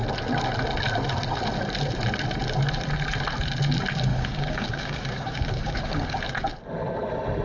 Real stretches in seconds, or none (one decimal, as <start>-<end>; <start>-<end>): 0.0-4.1; 6.2-7.4